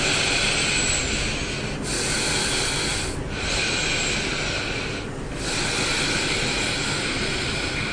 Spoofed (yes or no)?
no